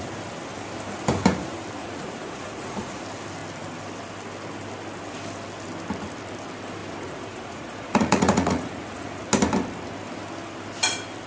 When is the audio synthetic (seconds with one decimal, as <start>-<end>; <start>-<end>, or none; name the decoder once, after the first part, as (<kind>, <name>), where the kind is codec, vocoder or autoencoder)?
1.8-3.0 (vocoder, Vocos); 6.8-9.2